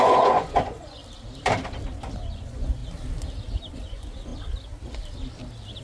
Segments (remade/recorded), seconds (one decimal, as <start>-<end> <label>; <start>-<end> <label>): 0.0-1.0 remade; 1.0-2.3 recorded; 2.3-2.8 remade; 2.8-3.7 recorded; 3.7-4.3 remade; 4.3-5.8 recorded

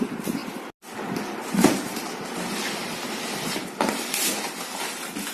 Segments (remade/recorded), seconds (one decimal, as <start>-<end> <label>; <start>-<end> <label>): 0.0-2.8 recorded; 2.8-4.2 remade; 4.2-5.3 recorded

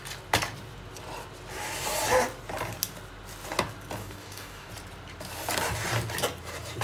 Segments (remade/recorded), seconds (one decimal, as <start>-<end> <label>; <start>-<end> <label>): 0.0-4.0 recorded; 4.0-4.7 remade; 4.7-6.8 recorded

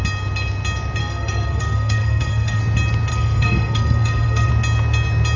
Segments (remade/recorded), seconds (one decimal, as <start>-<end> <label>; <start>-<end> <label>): 0.0-1.0 recorded; 1.0-2.6 remade; 2.6-3.1 recorded; 3.1-4.5 remade; 4.5-5.4 recorded

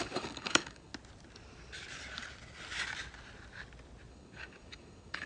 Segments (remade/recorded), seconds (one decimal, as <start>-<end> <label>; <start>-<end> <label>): 0.0-0.9 remade; 0.9-4.1 recorded; 4.1-5.3 remade

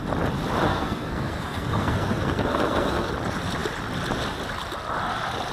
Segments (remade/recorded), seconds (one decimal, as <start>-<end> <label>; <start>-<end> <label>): 0.0-0.7 recorded; 0.7-3.1 remade; 3.1-5.5 recorded

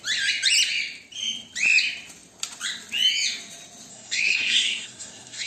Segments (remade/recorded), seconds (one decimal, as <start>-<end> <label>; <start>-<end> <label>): 0.0-3.9 recorded; 3.9-5.5 remade